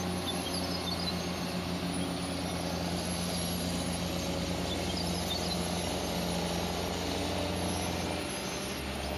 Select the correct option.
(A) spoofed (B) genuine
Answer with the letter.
B